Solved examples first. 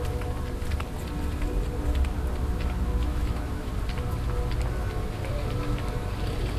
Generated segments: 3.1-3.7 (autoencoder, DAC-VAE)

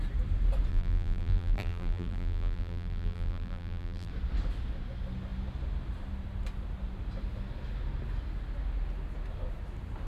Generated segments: 0.7-4.1 (vocoder, BigVGAN v2)

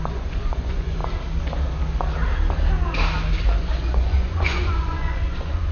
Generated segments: 0.0-1.0 (vocoder, Vocos); 3.6-5.7

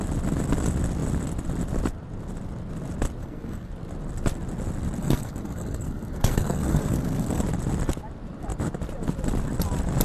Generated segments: 3.2-3.7 (codec, SNAC); 5.0-7.4

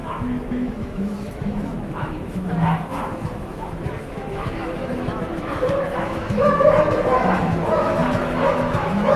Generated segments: 0.0-9.2 (autoencoder, DAC-VAE)

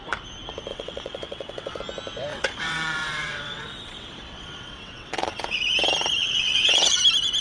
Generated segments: 0.7-1.8 (vocoder, WaveNeXt); 2.3-5.6; 6.2-7.0

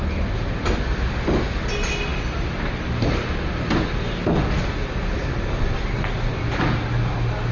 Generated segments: none